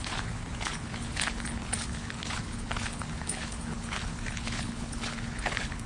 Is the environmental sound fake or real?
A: fake